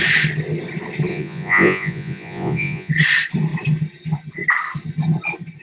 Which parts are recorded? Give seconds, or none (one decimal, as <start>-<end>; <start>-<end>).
0.0-1.1; 2.9-5.6